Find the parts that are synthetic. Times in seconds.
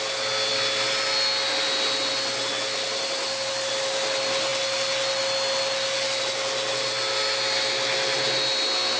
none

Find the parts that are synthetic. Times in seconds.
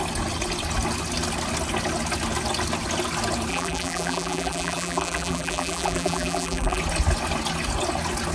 3.5-6.8 (vocoder, BigVGAN v2)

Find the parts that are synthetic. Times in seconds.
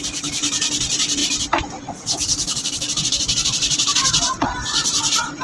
1.2-4.4 (vocoder, BigVGAN v2)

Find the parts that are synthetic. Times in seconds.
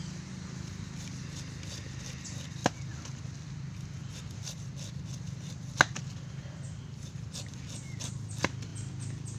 none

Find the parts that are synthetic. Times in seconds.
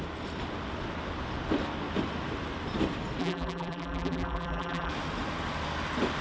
3.2-4.9 (vocoder, BigVGAN v2)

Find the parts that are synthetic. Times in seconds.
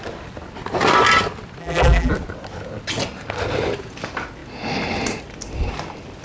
1.6-2.1 (vocoder, BigVGAN v2)